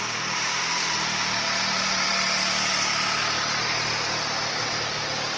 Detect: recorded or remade recorded